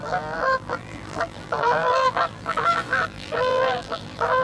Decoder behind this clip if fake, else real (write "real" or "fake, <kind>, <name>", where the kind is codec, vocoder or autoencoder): fake, vocoder, BigVGAN v2